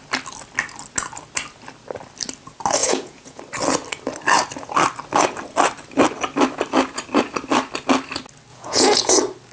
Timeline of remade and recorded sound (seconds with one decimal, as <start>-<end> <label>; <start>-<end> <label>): 0.0-2.8 recorded; 2.8-3.4 remade; 3.4-8.5 recorded; 8.5-9.1 remade; 9.1-9.5 recorded